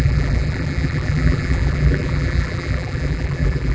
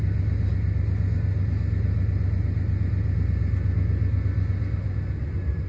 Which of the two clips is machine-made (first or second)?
first